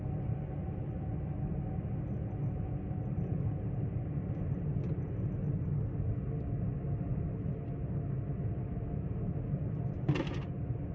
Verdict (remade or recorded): recorded